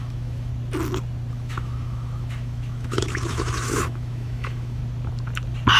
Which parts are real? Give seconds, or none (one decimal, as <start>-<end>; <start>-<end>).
0.5-1.3; 4.8-5.8

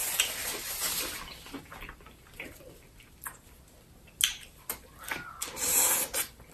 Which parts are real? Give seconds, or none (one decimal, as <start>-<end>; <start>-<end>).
0.0-6.5

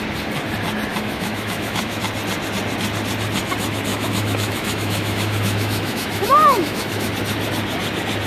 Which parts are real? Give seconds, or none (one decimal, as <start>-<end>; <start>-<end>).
0.0-0.9; 2.0-3.9; 7.1-8.3

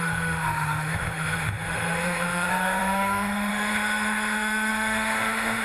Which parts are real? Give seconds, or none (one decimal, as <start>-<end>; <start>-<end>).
none